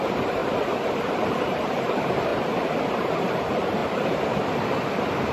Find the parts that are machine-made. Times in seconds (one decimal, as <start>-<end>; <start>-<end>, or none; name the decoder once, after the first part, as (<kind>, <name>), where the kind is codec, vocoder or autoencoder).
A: 0.0-0.4 (vocoder, BigVGAN v2); 1.0-2.3; 2.9-3.8